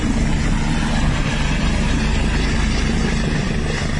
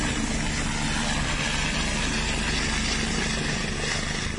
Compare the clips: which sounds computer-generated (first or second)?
first